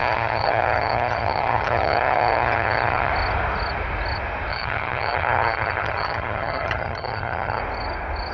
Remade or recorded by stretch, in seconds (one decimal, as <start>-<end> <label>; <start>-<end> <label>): 0.0-3.1 remade; 3.1-4.5 recorded; 4.5-7.6 remade; 7.6-8.3 recorded